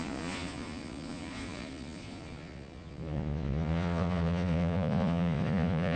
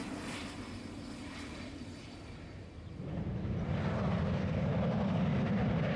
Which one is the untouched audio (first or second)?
second